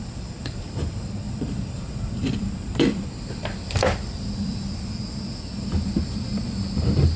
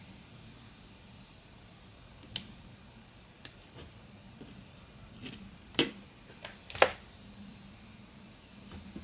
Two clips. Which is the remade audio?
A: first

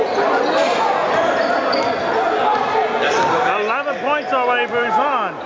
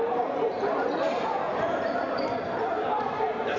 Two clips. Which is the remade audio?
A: second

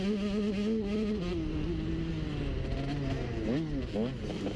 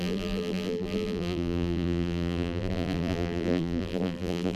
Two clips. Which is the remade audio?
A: second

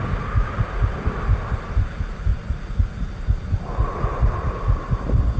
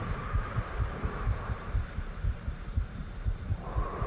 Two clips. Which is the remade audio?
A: second